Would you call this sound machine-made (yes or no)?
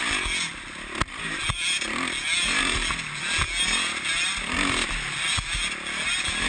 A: no